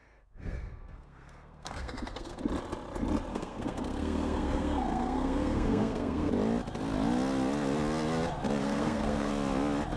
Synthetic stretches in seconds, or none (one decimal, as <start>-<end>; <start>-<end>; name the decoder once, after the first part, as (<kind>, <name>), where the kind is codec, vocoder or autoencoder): 0.0-2.4 (codec, SNAC); 3.3-6.3; 8.6-9.3